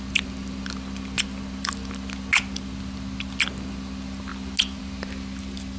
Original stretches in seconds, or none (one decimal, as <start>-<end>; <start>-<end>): 0.0-5.8